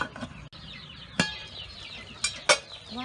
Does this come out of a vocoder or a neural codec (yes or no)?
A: no